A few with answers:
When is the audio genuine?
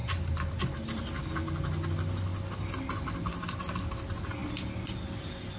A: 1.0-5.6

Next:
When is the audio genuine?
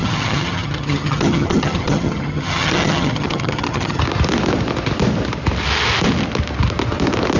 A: 4.0-7.4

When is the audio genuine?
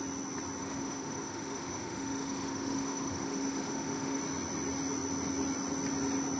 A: 0.0-0.6; 4.2-6.4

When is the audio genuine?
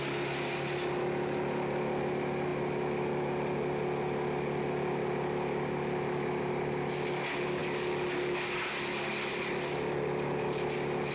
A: 0.0-11.1